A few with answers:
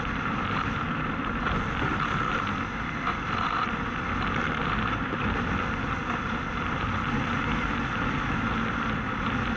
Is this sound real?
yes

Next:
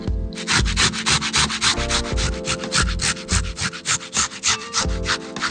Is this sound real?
yes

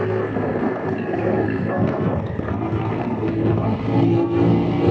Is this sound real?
no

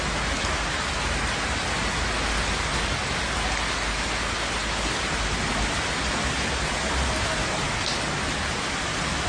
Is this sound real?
yes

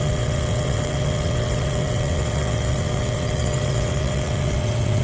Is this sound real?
no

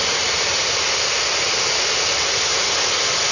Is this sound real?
yes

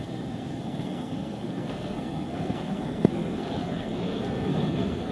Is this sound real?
no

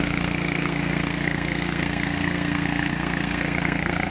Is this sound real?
no